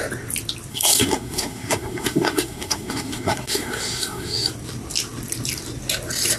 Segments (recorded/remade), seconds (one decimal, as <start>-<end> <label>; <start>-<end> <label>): 0.0-0.7 recorded; 0.7-4.5 remade; 4.5-6.4 recorded